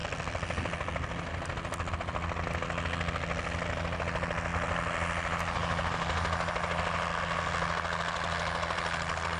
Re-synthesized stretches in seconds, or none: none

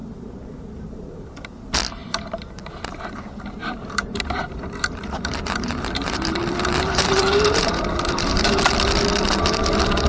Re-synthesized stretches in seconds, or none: 0.0-1.2 (vocoder, BigVGAN v2); 3.6-8.6

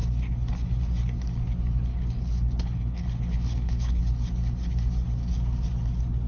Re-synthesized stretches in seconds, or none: 1.9-4.0 (codec, HILCodec)

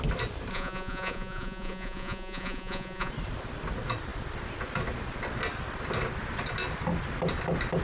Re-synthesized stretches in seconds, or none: 0.5-3.1 (vocoder, Vocos)